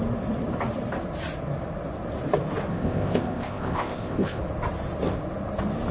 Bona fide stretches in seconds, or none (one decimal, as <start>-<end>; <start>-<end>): 0.0-2.7; 4.4-5.9